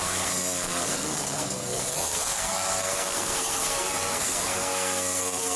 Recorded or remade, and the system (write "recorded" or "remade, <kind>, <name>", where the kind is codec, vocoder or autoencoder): remade, codec, SNAC